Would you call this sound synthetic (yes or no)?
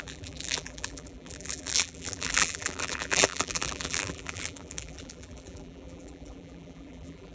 yes